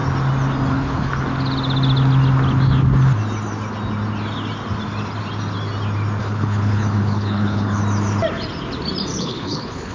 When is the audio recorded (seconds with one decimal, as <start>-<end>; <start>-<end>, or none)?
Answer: 0.0-0.7; 1.1-6.2; 7.8-9.2